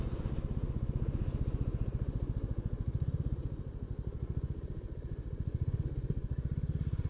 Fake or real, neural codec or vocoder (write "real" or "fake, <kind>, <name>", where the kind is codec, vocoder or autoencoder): real